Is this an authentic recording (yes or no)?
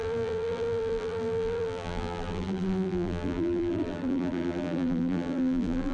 no